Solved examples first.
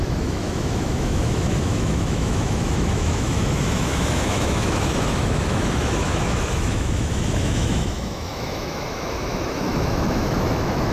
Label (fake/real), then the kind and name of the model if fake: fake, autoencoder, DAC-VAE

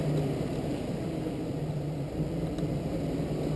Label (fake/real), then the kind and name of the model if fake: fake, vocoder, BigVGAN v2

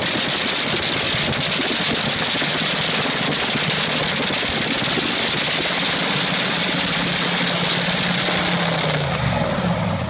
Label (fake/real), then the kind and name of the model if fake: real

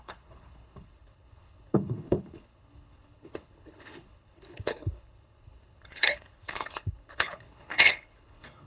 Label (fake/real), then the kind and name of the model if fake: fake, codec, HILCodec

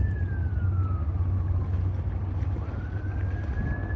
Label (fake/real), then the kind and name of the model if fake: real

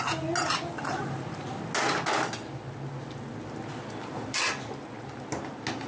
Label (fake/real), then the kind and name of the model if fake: real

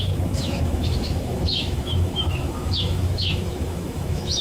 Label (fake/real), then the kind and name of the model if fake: fake, autoencoder, DAC-VAE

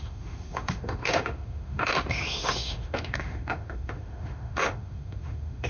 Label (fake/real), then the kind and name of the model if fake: fake, autoencoder, DAC-VAE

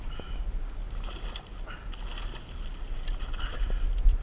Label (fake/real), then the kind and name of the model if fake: real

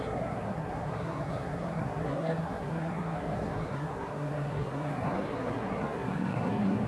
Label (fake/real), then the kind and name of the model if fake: fake, codec, SNAC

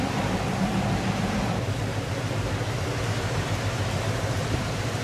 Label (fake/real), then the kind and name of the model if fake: fake, vocoder, BigVGAN v2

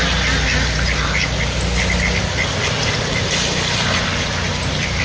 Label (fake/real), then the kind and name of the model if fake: real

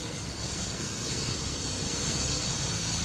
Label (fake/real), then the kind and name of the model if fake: fake, codec, SNAC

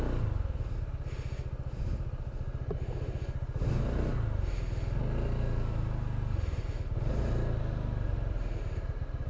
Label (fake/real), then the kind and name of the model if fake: real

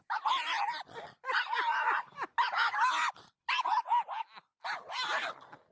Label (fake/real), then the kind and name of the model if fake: real